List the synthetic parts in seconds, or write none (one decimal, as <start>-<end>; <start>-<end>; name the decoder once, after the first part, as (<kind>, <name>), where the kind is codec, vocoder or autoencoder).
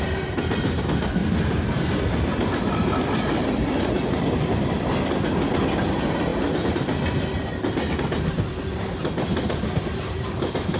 none